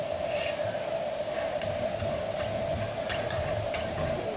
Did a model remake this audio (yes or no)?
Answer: no